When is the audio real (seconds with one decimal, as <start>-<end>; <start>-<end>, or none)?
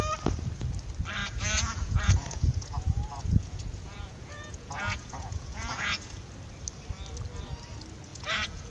0.0-1.2; 6.2-8.1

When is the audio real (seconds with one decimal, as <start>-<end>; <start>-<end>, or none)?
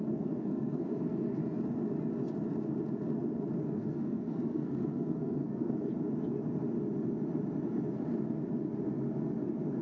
1.4-3.6; 5.9-9.8